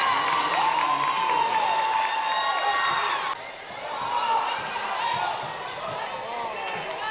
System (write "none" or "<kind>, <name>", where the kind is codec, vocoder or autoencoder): none